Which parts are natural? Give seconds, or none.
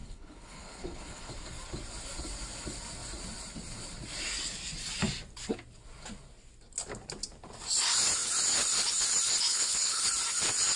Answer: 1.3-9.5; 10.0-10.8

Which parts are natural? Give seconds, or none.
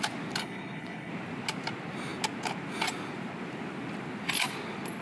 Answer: 0.0-0.4; 1.1-5.0